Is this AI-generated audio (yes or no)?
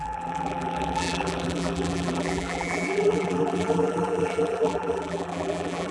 yes